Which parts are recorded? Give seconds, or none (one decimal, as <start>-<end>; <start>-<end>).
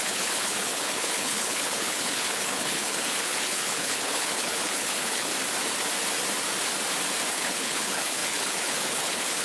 5.3-7.3